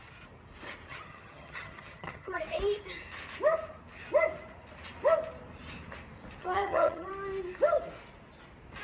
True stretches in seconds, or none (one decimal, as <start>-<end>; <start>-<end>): 0.0-0.9; 2.4-6.4; 7.1-8.8